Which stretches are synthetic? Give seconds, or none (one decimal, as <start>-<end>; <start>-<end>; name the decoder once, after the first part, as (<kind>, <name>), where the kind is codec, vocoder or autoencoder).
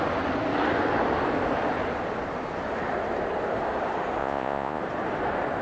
4.2-4.8 (vocoder, Vocos)